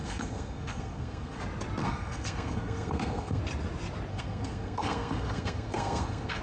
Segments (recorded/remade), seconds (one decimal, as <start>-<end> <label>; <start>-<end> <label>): 0.0-1.4 remade; 1.4-1.8 recorded; 1.8-3.4 remade; 3.4-4.1 recorded; 4.1-6.4 remade